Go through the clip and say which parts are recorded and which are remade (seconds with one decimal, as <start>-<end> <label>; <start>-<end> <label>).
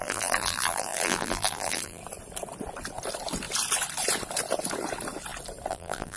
0.0-2.0 remade; 2.0-5.7 recorded; 5.7-6.2 remade